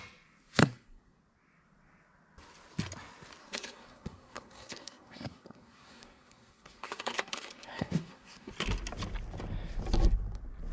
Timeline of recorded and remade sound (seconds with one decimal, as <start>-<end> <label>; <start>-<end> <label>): 0.0-0.6 recorded; 0.6-1.2 remade; 1.2-3.4 recorded; 3.4-8.5 remade; 8.5-10.7 recorded